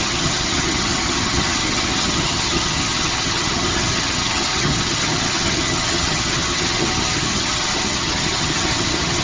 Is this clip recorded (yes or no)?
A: no